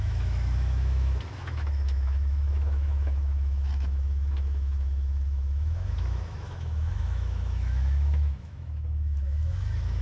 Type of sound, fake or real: fake